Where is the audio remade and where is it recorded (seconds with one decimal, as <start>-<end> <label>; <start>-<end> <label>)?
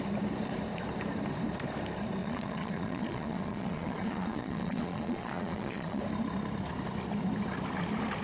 0.0-2.2 recorded; 2.2-6.0 remade; 6.0-8.2 recorded